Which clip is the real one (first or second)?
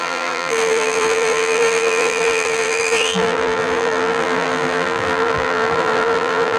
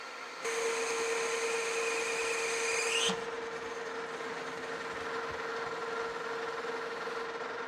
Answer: second